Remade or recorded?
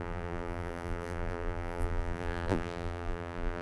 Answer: remade